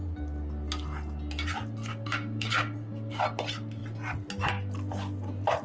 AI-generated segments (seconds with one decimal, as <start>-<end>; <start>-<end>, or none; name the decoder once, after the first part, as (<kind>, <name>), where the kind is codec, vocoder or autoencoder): 1.9-3.2 (codec, DAC)